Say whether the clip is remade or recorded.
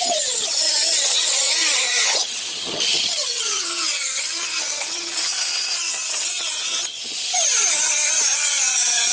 remade